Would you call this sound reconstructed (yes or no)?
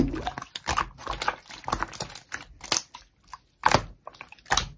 no